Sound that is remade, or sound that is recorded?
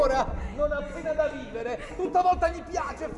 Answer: recorded